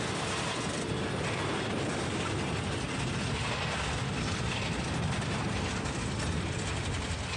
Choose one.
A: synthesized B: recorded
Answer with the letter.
B